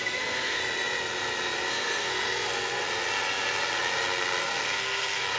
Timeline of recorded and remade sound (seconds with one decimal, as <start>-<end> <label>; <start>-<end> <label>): 0.0-0.6 remade; 0.6-1.7 recorded; 1.7-2.8 remade; 2.8-4.4 recorded; 4.4-5.4 remade

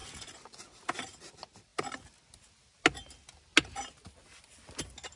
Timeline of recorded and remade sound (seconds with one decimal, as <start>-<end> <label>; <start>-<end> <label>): 0.0-5.2 recorded

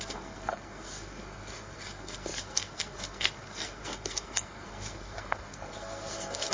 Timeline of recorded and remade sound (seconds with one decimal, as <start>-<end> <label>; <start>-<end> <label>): 0.0-6.5 remade

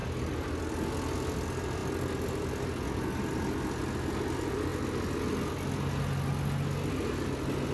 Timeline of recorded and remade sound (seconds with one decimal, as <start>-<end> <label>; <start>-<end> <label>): 0.0-7.7 recorded

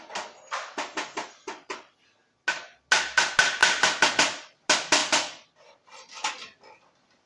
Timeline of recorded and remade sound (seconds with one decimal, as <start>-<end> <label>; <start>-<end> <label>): 0.0-7.3 recorded